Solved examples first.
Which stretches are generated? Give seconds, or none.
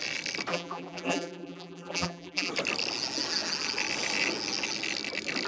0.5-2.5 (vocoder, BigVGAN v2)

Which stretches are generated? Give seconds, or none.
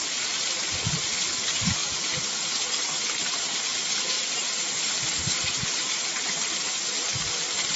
1.8-3.2 (vocoder, BigVGAN v2)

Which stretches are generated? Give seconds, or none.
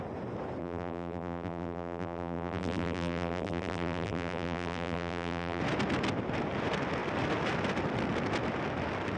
0.6-5.6 (vocoder, BigVGAN v2)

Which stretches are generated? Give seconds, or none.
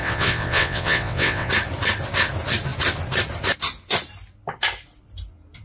0.0-1.5 (vocoder, WaveNeXt)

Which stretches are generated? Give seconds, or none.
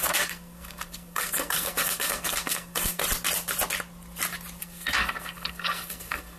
0.0-3.0 (codec, SNAC); 4.6-6.4